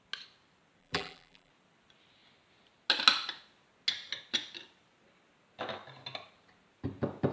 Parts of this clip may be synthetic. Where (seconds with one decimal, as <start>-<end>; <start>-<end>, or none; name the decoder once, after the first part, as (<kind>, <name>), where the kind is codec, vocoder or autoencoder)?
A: 0.8-1.5 (vocoder, BigVGAN v2)